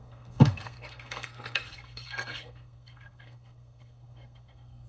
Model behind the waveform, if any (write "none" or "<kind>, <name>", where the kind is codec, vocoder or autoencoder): codec, SNAC